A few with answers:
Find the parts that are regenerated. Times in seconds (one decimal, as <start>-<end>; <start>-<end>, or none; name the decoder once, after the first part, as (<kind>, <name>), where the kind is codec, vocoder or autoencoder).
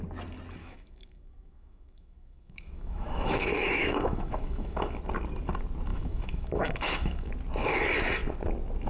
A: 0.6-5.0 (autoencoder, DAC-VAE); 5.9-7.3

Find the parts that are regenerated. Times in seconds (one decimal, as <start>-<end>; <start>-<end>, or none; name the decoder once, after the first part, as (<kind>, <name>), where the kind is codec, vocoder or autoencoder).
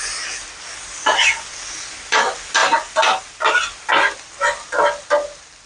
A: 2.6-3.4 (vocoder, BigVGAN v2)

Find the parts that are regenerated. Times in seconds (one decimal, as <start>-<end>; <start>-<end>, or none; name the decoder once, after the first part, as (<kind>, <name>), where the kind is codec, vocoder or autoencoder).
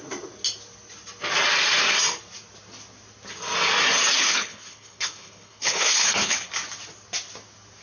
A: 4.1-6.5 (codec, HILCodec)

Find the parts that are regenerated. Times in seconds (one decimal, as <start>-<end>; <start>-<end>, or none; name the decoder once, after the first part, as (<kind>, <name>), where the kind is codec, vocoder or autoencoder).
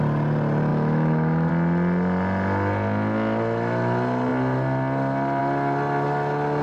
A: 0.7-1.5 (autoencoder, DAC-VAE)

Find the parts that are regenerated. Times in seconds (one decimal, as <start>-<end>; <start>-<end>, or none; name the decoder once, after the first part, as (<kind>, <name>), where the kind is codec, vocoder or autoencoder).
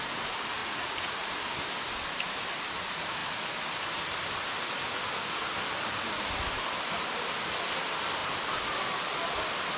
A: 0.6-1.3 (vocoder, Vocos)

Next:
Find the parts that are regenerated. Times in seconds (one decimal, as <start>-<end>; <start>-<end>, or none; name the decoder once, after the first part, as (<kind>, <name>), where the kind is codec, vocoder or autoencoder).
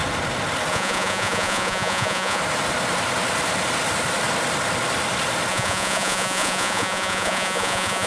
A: 0.7-2.4 (vocoder, Vocos); 5.5-8.1